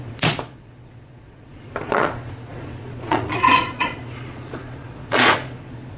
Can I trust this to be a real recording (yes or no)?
no